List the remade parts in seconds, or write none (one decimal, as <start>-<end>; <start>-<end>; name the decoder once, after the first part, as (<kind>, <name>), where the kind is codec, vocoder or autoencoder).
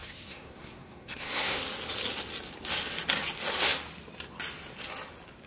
0.0-1.6 (codec, SNAC)